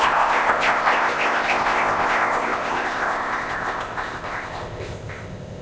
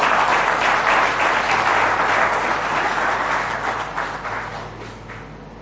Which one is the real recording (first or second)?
second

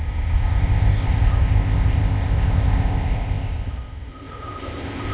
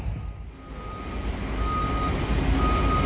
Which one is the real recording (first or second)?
second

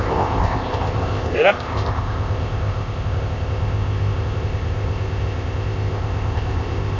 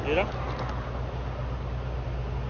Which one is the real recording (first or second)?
second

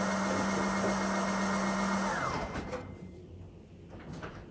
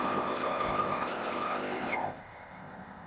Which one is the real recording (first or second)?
first